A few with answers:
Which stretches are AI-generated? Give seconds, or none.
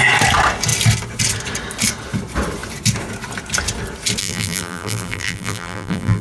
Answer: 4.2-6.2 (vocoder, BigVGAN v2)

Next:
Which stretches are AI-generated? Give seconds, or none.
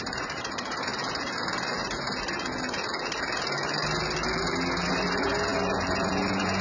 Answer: 0.0-0.9 (vocoder, BigVGAN v2); 4.9-6.6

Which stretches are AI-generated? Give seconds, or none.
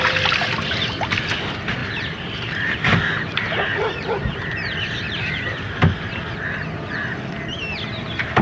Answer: 1.8-6.2 (vocoder, BigVGAN v2)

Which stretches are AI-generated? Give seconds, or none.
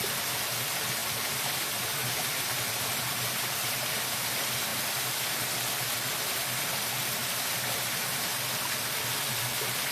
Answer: 0.0-4.7 (vocoder, BigVGAN v2); 7.3-9.9